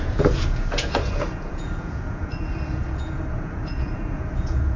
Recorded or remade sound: remade